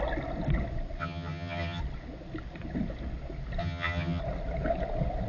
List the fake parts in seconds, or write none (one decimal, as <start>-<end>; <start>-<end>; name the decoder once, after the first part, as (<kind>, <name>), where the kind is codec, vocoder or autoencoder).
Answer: 1.0-1.8 (vocoder, HiFi-GAN); 3.6-4.2